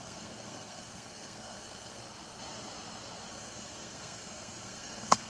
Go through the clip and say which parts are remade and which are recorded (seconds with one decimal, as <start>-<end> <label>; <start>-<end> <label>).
0.0-2.0 remade; 2.0-3.3 recorded; 3.3-5.3 remade